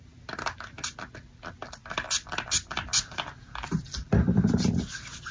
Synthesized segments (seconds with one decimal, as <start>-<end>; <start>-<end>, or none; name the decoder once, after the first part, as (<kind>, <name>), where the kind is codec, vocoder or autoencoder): none